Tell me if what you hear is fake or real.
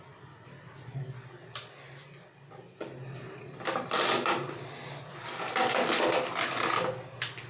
real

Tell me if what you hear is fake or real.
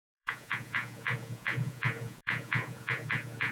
fake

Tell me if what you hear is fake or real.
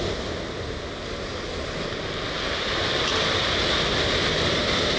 real